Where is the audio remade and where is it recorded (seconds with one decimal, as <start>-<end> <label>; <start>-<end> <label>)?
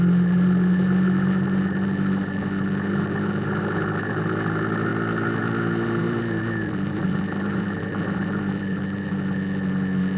0.0-6.0 recorded; 6.0-9.1 remade; 9.1-10.2 recorded